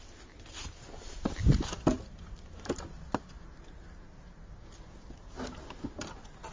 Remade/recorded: recorded